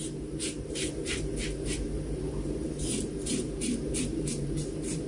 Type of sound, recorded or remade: remade